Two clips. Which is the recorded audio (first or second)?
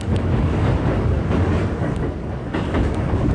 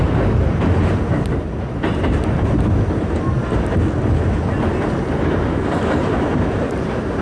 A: second